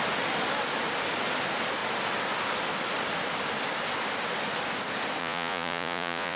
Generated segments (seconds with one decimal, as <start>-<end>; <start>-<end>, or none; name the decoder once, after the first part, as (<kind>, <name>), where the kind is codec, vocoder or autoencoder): 5.2-6.4 (vocoder, Vocos)